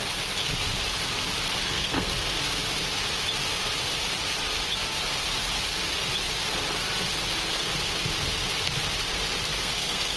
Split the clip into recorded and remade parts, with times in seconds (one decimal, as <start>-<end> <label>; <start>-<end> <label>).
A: 0.0-1.6 recorded; 1.6-2.3 remade; 2.3-9.5 recorded; 9.5-10.2 remade